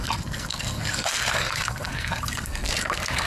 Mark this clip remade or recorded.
remade